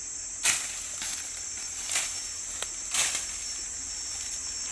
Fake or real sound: real